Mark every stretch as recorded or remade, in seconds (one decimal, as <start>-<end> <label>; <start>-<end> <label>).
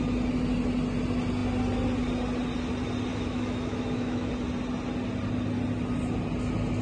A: 0.0-3.1 recorded; 3.1-4.3 remade; 4.3-6.8 recorded